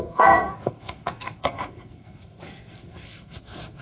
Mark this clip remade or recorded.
remade